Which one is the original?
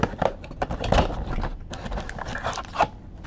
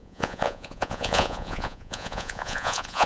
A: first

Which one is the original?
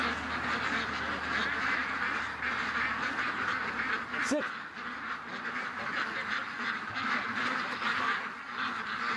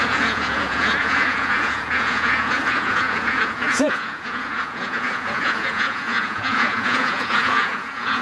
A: first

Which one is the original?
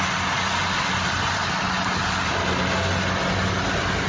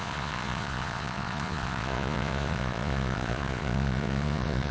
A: first